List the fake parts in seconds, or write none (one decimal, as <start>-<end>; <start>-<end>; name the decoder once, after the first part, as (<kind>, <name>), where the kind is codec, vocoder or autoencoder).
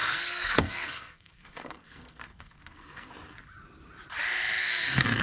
0.0-3.1 (codec, SNAC); 4.6-5.2